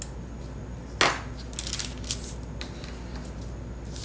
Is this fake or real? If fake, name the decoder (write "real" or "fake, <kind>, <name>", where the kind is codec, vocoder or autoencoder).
real